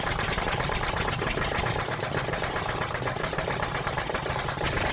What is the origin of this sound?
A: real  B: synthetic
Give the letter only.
B